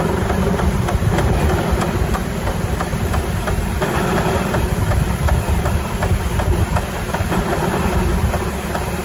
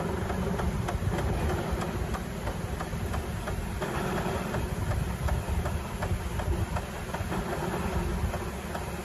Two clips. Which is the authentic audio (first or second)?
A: second